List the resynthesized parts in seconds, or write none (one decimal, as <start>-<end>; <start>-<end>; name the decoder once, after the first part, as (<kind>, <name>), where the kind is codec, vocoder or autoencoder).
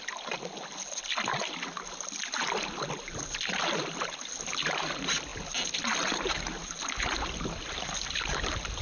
none